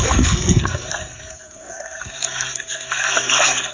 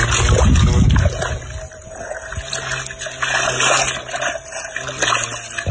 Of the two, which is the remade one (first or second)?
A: first